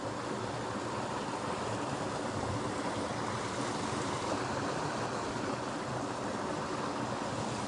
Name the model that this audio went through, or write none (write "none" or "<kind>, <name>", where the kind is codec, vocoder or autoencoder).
none